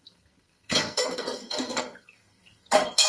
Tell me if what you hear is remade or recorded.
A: remade